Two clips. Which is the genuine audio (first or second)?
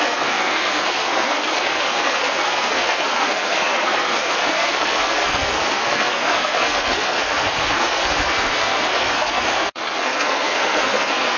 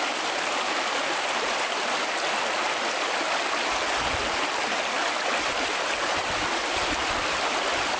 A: second